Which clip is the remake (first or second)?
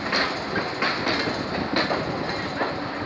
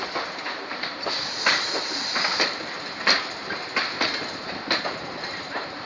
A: second